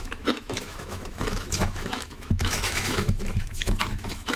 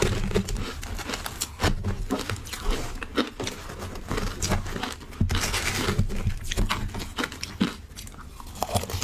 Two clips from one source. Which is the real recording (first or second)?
second